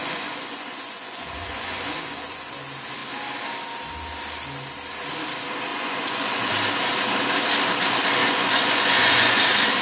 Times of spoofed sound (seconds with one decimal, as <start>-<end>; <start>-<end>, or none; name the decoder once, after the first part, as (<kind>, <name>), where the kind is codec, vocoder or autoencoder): 0.0-2.5 (vocoder, Vocos); 5.7-6.5; 8.2-9.4